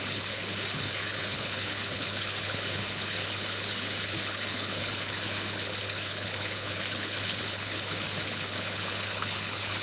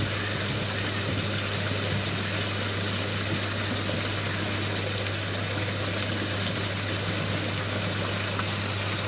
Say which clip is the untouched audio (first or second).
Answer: second